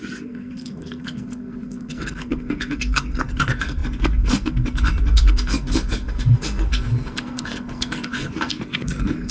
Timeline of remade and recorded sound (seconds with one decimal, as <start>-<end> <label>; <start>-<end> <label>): 0.0-9.3 remade